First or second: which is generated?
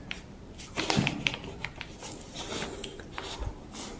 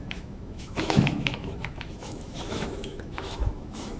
second